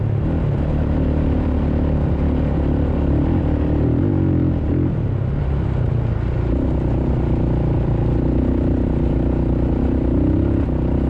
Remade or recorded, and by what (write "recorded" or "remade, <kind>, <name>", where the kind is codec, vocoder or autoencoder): recorded